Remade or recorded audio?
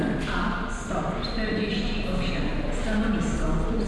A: recorded